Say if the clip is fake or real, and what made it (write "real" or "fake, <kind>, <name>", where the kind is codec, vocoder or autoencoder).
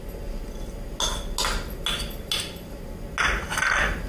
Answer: real